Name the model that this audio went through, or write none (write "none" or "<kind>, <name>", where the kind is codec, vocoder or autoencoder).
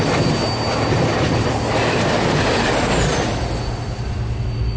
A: none